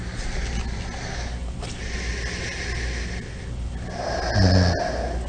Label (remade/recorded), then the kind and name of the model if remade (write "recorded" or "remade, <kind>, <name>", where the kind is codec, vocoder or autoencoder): recorded